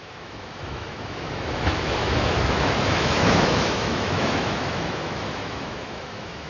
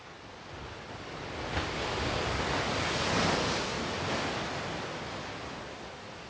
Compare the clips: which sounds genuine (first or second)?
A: second